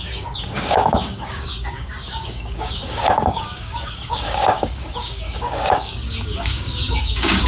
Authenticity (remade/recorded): remade